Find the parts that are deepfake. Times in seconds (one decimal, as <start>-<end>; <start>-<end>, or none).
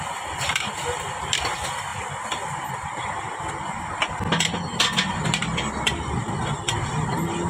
none